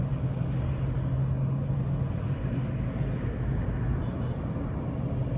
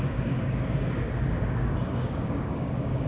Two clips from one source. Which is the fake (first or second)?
second